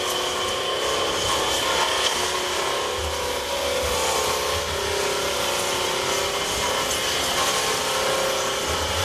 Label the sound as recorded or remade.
recorded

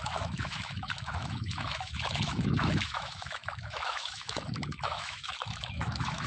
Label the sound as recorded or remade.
remade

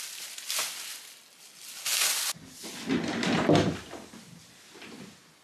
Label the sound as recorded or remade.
recorded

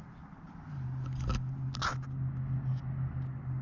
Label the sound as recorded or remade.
recorded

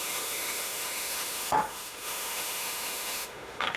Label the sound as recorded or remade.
remade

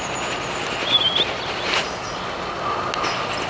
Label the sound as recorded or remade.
recorded